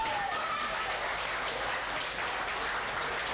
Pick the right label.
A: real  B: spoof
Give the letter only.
A